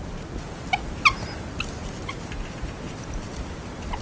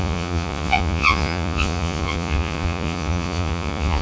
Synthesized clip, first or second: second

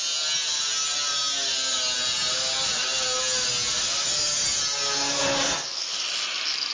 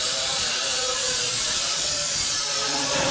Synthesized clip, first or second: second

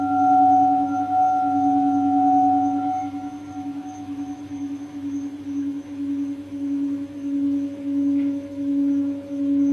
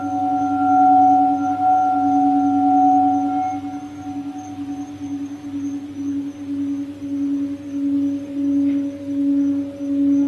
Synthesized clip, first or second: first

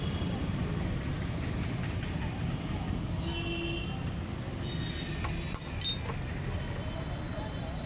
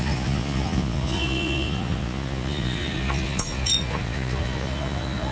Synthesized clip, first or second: second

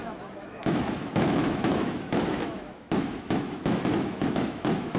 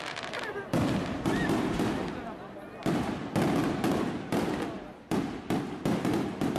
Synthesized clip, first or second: first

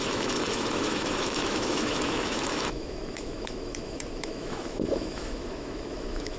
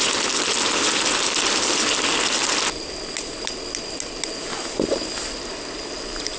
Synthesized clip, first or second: first